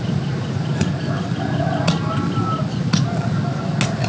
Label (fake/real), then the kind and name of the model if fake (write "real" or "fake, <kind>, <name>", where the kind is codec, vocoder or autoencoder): real